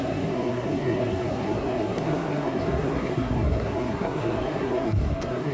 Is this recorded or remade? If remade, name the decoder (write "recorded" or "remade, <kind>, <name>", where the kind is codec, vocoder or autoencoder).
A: remade, codec, SNAC